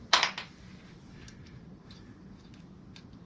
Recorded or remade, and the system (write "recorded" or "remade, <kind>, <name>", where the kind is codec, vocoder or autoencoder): recorded